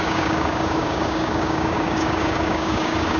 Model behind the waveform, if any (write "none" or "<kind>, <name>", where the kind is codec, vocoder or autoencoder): codec, DAC